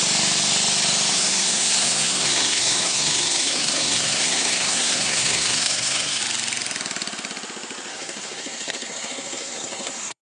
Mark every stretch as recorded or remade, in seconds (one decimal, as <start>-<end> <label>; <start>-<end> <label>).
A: 0.0-1.1 recorded; 1.1-6.2 remade; 6.2-7.9 recorded; 7.9-10.2 remade